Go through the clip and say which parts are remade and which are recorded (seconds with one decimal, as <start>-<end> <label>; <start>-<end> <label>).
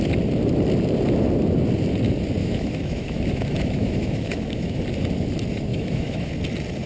0.0-2.4 recorded; 2.4-4.8 remade; 4.8-5.7 recorded; 5.7-6.3 remade; 6.3-6.9 recorded